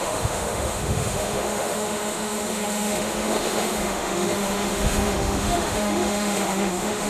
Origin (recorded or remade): remade